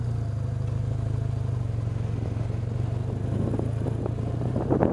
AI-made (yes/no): no